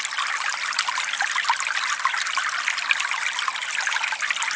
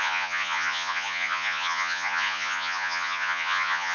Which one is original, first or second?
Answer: first